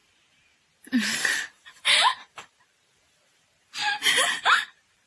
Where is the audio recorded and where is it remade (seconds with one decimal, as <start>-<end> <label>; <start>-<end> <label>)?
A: 0.0-3.1 remade; 3.1-4.0 recorded; 4.0-5.1 remade